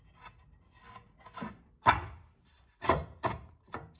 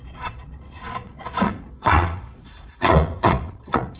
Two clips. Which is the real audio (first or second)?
first